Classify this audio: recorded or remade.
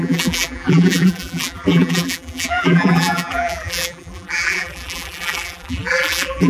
remade